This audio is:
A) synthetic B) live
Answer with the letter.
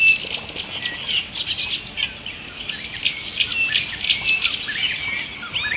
B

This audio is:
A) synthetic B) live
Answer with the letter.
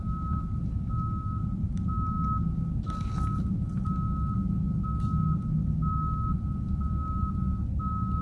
B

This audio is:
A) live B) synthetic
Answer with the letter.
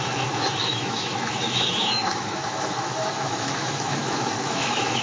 B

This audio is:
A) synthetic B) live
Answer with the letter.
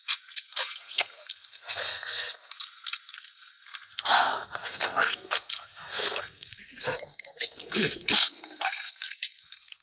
A